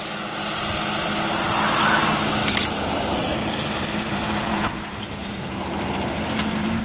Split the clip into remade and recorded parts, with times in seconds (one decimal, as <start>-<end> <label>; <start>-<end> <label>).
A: 0.0-2.4 recorded; 2.4-6.8 remade